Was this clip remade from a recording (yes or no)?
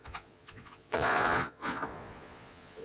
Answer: yes